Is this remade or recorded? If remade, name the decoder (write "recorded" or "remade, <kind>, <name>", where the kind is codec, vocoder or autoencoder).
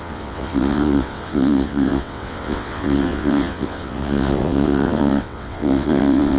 remade, vocoder, WaveNeXt